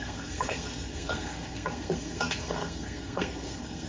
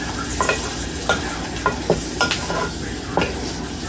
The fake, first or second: first